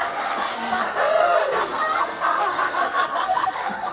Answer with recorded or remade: remade